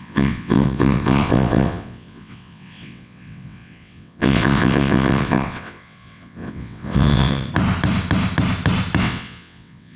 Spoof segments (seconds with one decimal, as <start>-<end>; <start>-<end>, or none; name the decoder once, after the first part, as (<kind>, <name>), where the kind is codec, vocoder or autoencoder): 0.0-7.5 (vocoder, WaveNeXt); 9.0-10.0